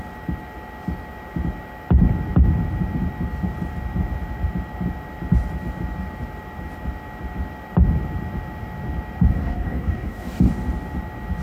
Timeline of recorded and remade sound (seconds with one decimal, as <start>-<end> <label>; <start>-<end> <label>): 0.0-9.3 recorded; 9.3-10.5 remade; 10.5-11.4 recorded